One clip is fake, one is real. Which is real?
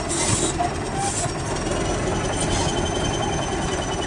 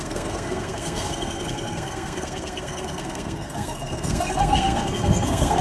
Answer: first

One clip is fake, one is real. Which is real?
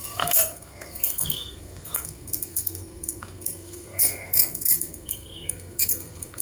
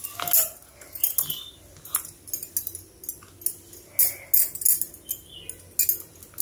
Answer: second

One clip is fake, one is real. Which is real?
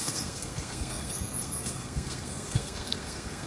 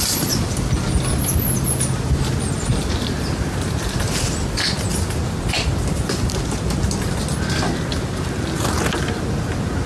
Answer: second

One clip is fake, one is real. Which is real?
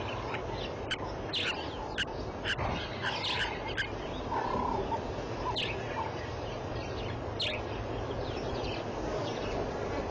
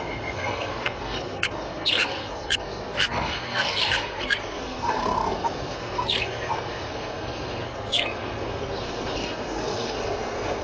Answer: first